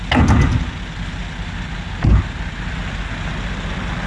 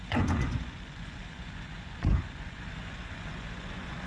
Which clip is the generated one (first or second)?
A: second